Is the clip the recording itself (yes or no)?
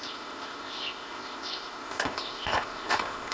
no